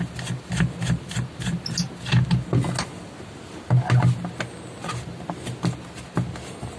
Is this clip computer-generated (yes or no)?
no